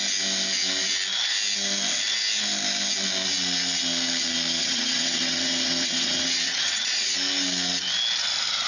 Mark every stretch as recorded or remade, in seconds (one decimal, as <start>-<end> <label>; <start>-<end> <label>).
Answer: 0.0-4.6 recorded; 4.6-7.1 remade; 7.1-8.7 recorded